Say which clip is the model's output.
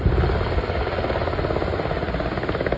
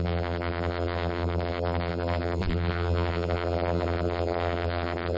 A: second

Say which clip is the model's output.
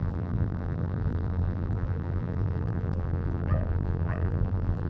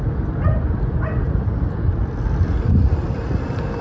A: first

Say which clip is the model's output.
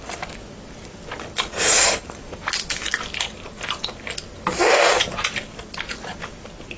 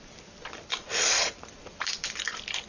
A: second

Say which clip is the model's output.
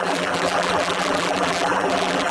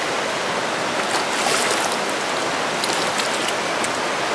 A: first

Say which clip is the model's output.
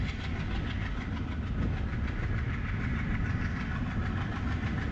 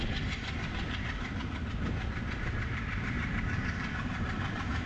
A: second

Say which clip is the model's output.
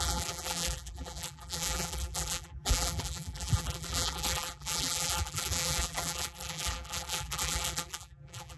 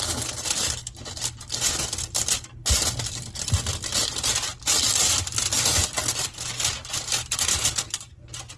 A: first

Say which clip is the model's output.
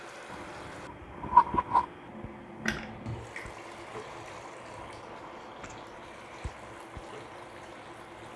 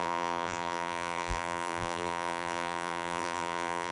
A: second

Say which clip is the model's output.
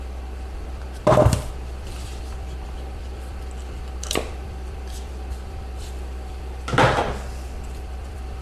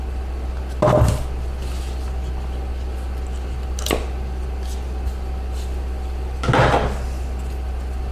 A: first